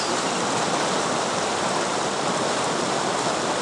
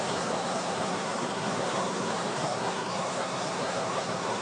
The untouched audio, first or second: first